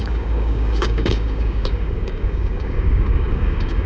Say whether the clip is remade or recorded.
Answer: remade